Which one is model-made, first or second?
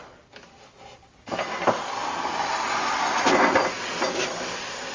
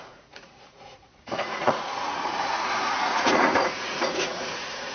second